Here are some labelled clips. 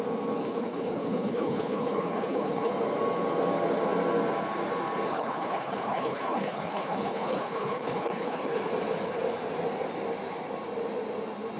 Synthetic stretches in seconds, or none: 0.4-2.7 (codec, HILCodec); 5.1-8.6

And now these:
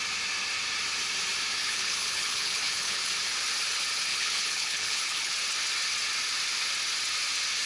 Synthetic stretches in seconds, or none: 1.6-3.1 (codec, HILCodec); 4.1-5.3

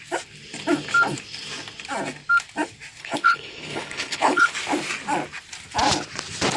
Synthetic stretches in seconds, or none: 3.0-4.5 (codec, HILCodec)

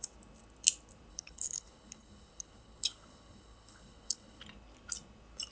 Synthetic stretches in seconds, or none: 1.1-4.4 (codec, HILCodec)

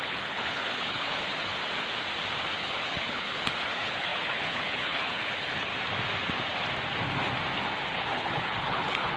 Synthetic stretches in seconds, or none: 0.0-1.6 (codec, HILCodec); 2.6-5.7; 7.9-9.2

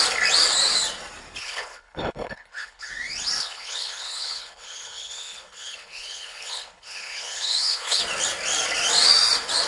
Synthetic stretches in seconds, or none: 1.4-2.9 (codec, HILCodec); 3.4-8.0